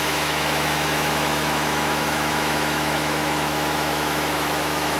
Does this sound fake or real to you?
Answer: fake